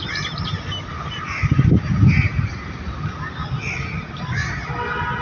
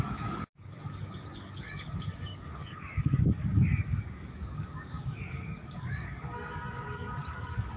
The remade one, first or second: second